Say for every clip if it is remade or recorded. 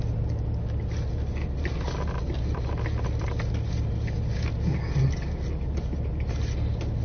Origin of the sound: recorded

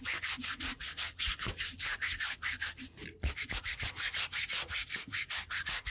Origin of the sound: recorded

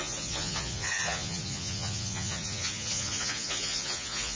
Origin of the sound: remade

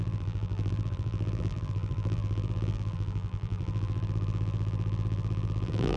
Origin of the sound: remade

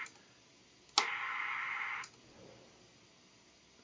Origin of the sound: recorded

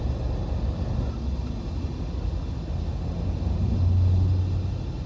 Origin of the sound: recorded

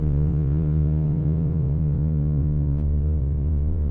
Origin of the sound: remade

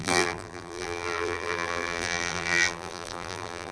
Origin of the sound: remade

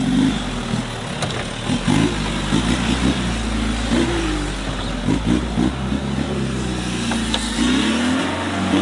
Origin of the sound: recorded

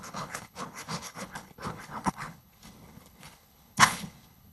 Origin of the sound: remade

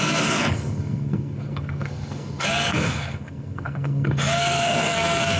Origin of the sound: remade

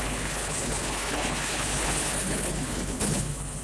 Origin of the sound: remade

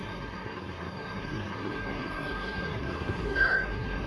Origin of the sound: remade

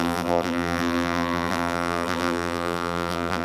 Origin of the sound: remade